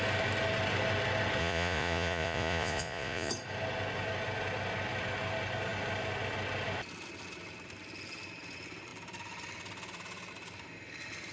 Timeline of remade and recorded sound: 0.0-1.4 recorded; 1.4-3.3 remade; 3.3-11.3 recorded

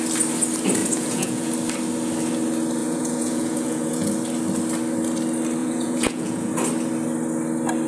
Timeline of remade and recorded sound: 0.0-0.8 recorded; 0.8-1.5 remade; 1.5-2.8 recorded; 2.8-4.1 remade; 4.1-5.6 recorded; 5.6-6.5 remade; 6.5-7.9 recorded

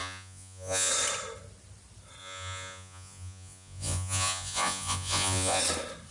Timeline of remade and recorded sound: 0.0-0.9 remade; 0.9-2.2 recorded; 2.2-5.6 remade; 5.6-6.1 recorded

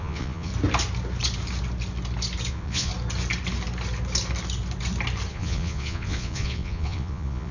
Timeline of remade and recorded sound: 0.0-0.5 remade; 0.5-2.5 recorded; 2.5-2.9 remade; 2.9-5.3 recorded; 5.3-7.5 remade

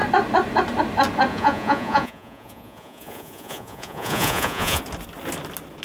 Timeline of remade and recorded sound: 0.0-1.3 recorded; 1.3-4.8 remade; 4.8-5.8 recorded

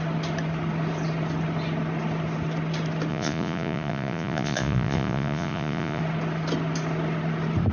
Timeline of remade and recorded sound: 0.0-3.1 recorded; 3.1-6.0 remade; 6.0-7.7 recorded